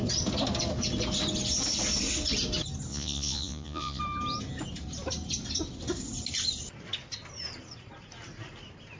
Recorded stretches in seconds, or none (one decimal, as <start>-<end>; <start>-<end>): 0.0-2.9; 4.0-9.0